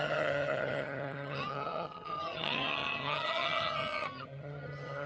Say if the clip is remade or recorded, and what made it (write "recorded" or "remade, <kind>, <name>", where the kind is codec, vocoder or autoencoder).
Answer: remade, vocoder, HiFi-GAN